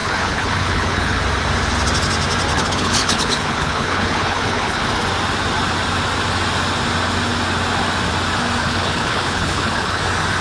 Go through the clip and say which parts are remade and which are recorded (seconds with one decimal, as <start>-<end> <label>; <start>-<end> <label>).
0.0-1.2 remade; 1.2-2.5 recorded; 2.5-4.8 remade; 4.8-8.6 recorded; 8.6-10.0 remade; 10.0-10.4 recorded